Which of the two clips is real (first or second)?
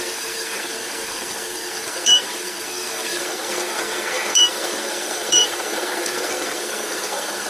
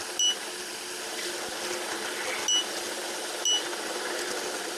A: second